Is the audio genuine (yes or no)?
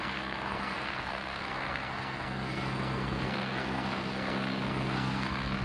no